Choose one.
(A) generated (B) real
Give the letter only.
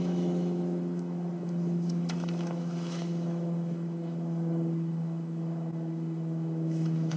A